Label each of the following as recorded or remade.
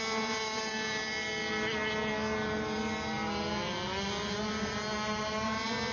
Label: recorded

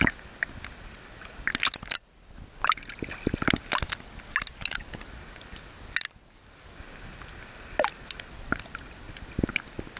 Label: recorded